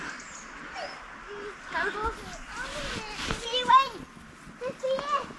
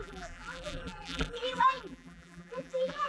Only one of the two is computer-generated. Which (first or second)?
second